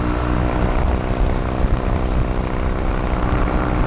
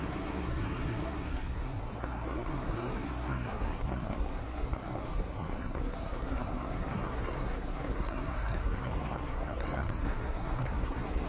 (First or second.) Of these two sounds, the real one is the first